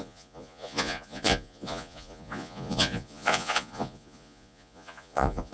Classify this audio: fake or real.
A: fake